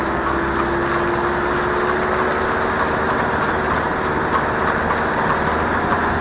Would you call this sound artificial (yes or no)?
no